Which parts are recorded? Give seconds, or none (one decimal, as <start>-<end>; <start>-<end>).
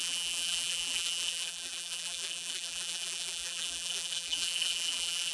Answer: none